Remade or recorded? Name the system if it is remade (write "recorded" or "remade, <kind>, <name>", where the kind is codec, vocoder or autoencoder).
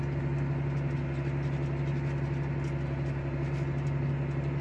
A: recorded